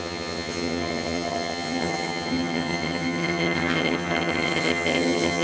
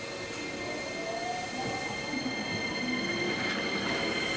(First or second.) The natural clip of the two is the second